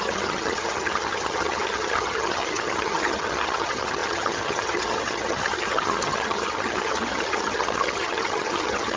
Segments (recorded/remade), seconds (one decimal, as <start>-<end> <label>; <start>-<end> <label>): 0.0-9.0 remade